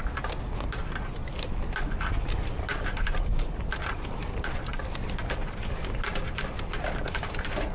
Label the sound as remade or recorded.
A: recorded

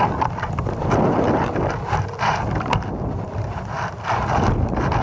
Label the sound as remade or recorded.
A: recorded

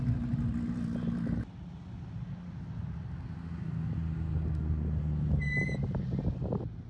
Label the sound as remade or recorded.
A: recorded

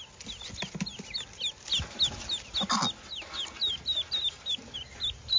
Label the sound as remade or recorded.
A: recorded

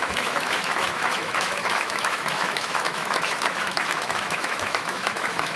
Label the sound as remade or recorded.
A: remade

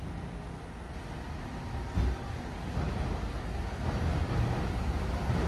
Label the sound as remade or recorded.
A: recorded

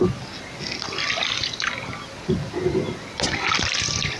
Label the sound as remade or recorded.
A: recorded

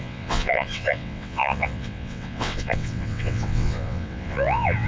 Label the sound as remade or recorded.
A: remade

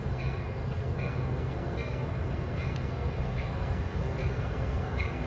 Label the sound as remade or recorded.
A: remade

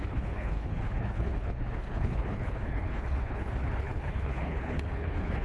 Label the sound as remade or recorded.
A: remade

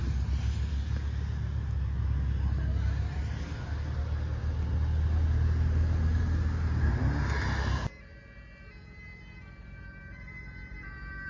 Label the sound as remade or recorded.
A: recorded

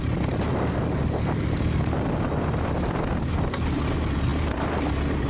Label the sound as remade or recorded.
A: recorded